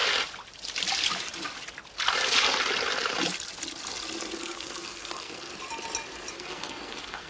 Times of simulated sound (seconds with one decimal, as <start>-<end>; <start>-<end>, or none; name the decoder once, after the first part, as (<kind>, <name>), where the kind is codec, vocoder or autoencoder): 4.4-5.5 (codec, SNAC); 6.3-7.3